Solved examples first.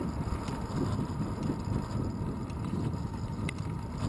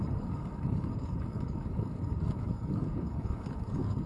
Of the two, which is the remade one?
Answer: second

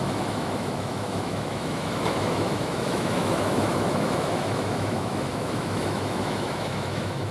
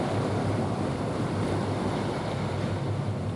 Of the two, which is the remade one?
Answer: first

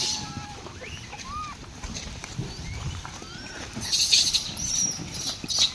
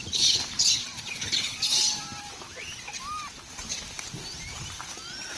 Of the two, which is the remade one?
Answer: first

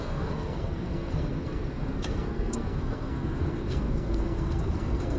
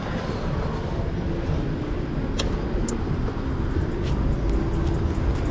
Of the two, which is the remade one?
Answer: first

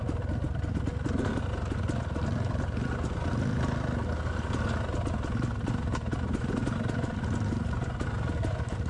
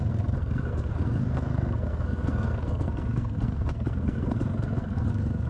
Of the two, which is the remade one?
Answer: second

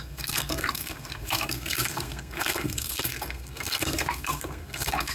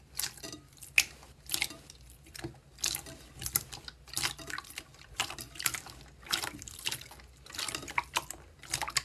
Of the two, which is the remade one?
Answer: first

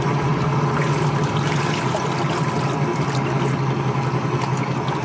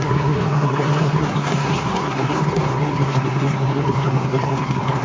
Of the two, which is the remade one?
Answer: second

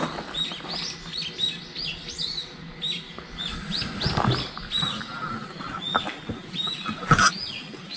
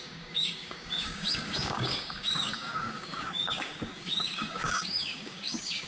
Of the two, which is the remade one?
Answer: second